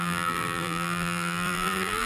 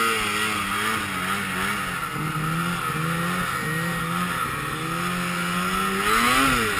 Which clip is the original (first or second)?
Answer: second